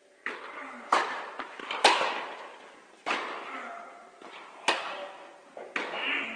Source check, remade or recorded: recorded